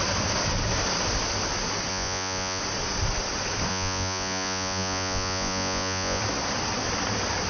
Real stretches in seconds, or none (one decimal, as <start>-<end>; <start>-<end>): 0.0-1.9; 2.6-3.7; 6.2-7.5